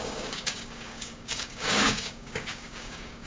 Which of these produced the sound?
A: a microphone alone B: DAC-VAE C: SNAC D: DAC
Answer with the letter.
D